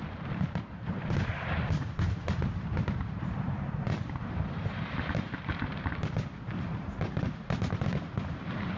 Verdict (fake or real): fake